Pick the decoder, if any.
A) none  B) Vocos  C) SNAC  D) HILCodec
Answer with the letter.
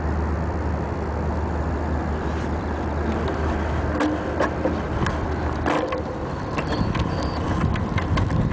A